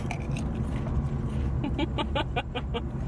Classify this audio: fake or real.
real